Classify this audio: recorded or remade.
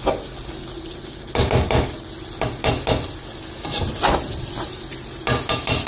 recorded